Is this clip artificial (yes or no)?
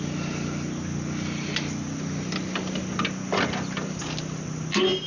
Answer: no